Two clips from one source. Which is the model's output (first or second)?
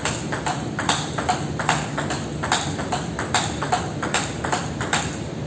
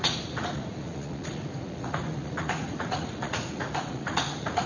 second